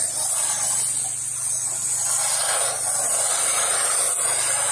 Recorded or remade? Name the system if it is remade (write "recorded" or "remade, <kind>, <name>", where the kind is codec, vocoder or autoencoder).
recorded